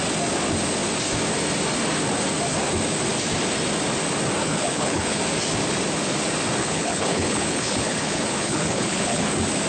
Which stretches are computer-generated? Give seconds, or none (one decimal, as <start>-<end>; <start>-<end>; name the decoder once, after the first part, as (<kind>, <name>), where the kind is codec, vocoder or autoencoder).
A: 4.4-5.2 (codec, HILCodec); 6.6-9.2